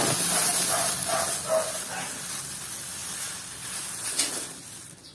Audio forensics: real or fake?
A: real